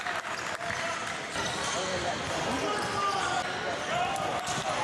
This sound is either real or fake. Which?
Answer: real